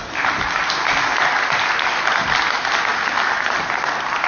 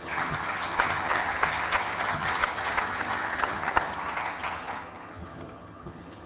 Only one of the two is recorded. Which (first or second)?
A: first